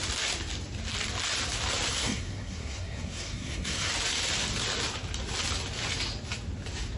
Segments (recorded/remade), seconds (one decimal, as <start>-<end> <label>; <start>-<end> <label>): 0.0-2.0 recorded; 2.0-3.9 remade; 3.9-7.0 recorded